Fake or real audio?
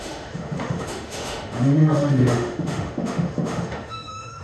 fake